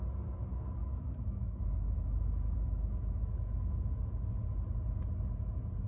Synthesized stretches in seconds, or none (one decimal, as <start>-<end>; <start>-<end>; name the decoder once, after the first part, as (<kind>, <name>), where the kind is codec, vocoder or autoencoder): 0.8-4.3 (autoencoder, DAC-VAE)